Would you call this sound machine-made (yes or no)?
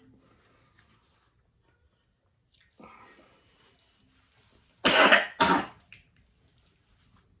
no